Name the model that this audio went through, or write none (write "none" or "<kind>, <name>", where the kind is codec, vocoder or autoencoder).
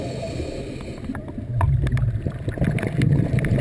none